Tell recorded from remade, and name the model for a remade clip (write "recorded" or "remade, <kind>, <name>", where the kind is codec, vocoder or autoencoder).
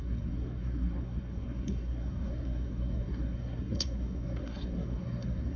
remade, codec, SNAC